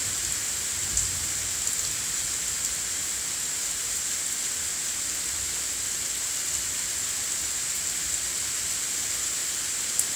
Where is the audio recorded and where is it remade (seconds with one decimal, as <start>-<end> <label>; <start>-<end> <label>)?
0.0-10.2 recorded